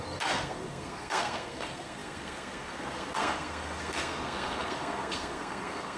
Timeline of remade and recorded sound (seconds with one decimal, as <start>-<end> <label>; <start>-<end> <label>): 0.0-6.0 remade